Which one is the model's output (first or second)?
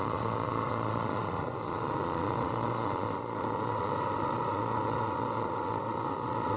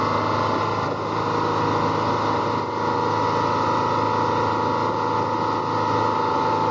first